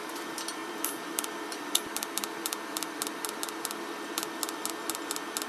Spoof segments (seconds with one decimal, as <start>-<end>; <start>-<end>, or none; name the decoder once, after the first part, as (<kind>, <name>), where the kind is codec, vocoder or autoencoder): 0.6-3.0 (vocoder, BigVGAN v2)